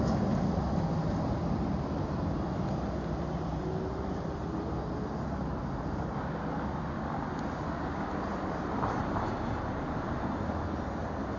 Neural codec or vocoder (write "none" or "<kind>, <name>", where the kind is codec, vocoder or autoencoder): none